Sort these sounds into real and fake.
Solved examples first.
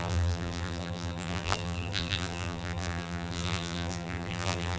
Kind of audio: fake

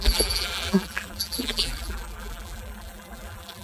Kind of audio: fake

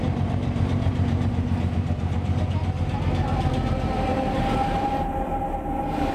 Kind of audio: fake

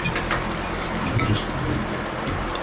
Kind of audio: real